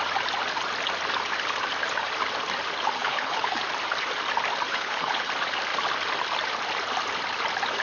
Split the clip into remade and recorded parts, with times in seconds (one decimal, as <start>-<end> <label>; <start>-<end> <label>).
0.0-3.0 recorded; 3.0-3.6 remade; 3.6-4.7 recorded; 4.7-5.3 remade; 5.3-7.8 recorded